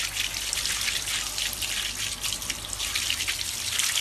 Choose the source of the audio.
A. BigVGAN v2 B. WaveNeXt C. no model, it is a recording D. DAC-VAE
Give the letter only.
C